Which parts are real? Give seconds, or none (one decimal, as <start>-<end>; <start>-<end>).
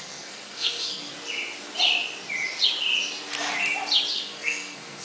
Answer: 1.1-4.1